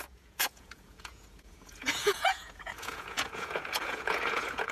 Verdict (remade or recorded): remade